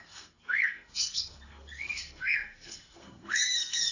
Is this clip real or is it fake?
fake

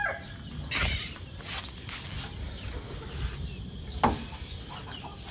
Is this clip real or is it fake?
real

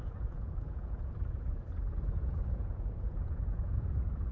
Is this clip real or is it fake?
fake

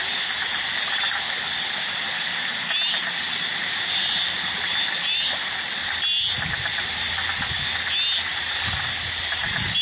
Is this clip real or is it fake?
real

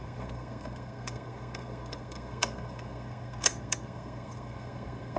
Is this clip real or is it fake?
fake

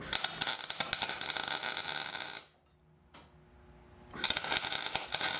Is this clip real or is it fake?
real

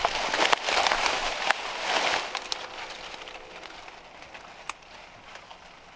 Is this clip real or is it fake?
real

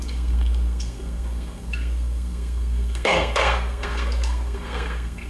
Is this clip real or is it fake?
fake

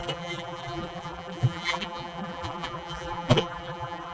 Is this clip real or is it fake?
fake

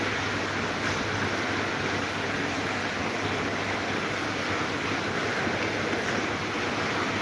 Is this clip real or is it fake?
real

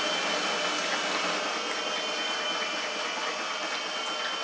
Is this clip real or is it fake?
real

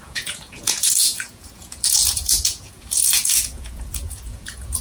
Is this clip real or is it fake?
fake